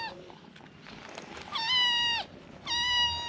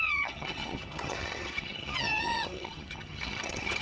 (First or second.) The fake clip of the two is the second